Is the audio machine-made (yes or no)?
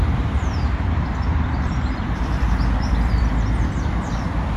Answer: yes